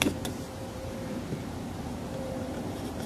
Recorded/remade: remade